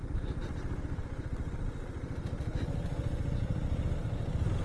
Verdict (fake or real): real